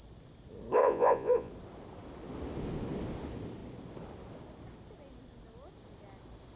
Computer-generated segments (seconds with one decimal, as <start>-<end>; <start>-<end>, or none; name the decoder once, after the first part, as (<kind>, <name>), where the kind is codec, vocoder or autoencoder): 0.8-1.5 (vocoder, Vocos)